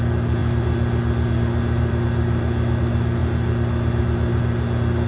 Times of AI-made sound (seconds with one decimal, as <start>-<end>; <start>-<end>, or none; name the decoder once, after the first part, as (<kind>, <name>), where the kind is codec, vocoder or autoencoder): none